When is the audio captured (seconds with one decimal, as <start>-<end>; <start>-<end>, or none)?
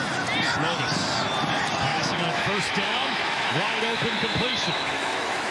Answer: 0.0-1.9